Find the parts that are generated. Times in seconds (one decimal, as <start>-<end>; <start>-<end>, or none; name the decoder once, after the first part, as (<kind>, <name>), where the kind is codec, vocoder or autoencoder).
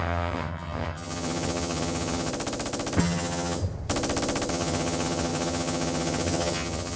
0.0-2.3 (vocoder, HiFi-GAN); 3.0-3.6; 4.5-7.0